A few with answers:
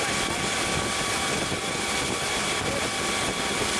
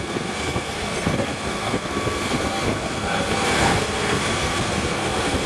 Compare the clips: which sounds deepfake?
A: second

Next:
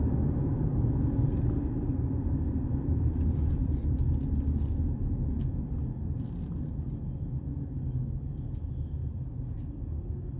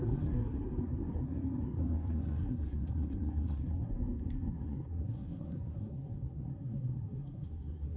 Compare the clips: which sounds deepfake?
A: second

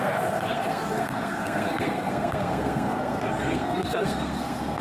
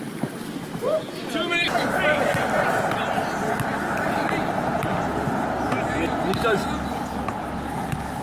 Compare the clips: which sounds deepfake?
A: first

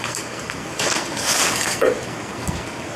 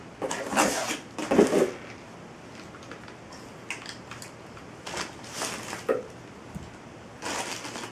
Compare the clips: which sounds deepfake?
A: first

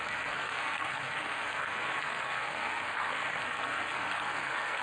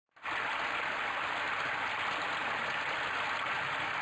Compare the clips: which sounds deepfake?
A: first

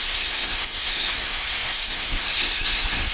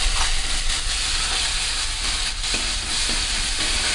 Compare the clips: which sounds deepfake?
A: first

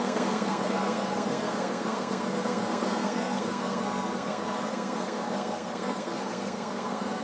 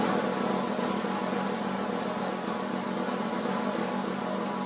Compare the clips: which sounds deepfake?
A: first